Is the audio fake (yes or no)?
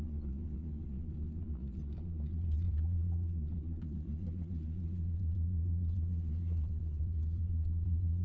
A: yes